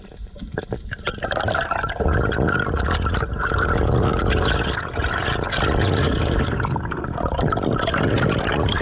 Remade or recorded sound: recorded